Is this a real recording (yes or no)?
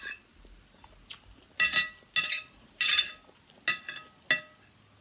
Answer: yes